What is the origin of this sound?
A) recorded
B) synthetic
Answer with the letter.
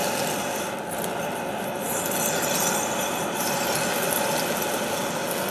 A